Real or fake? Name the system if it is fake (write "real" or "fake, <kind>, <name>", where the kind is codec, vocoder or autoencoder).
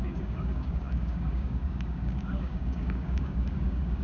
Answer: fake, codec, DAC